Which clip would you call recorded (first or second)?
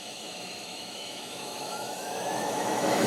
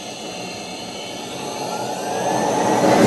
second